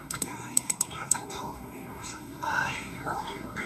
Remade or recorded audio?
remade